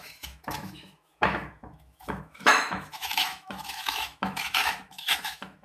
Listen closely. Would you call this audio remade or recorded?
remade